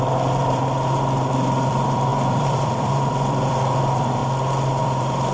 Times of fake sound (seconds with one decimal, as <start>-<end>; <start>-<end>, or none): 0.0-4.2; 4.8-5.3